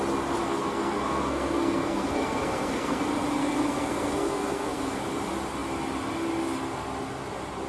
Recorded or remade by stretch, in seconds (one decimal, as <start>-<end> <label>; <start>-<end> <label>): 0.0-0.4 recorded; 0.4-3.0 remade; 3.0-3.4 recorded; 3.4-5.0 remade; 5.0-7.7 recorded